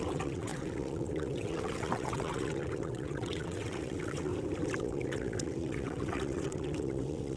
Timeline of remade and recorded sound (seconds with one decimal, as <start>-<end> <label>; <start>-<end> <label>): 0.0-4.3 remade; 4.3-4.8 recorded; 4.8-7.4 remade